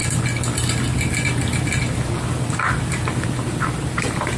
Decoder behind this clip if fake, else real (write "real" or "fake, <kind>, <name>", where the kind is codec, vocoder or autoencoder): real